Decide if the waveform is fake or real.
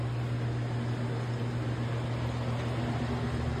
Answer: real